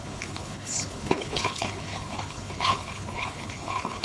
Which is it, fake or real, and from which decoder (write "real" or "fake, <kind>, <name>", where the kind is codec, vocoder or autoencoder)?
fake, codec, HILCodec